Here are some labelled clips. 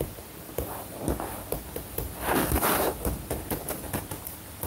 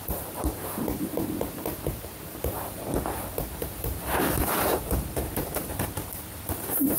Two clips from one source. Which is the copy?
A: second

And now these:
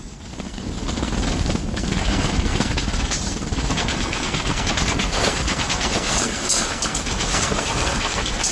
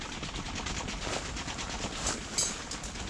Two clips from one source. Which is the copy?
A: first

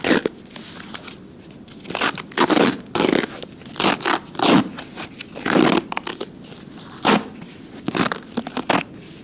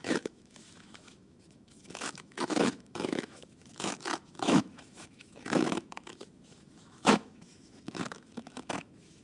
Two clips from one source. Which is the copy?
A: second